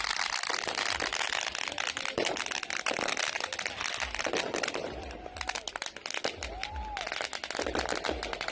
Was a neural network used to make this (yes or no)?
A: no